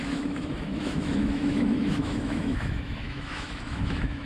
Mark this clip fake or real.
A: fake